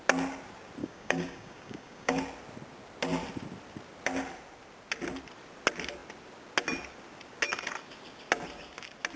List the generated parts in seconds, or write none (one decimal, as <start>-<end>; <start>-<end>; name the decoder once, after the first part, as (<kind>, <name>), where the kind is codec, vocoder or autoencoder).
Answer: 0.8-2.2 (codec, DAC)